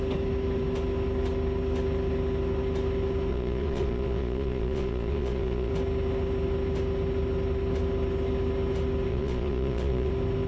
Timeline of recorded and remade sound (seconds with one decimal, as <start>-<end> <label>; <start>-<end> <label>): 0.0-3.3 recorded; 3.3-5.7 remade; 5.7-9.1 recorded; 9.1-10.1 remade; 10.1-10.5 recorded